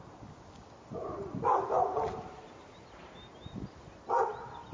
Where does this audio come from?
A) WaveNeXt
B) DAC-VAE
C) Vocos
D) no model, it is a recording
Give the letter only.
D